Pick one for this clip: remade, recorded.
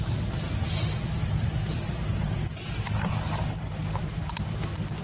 recorded